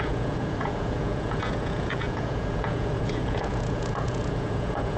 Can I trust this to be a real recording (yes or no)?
no